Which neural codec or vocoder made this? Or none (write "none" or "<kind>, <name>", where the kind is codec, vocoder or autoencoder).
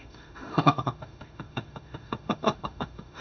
autoencoder, DAC-VAE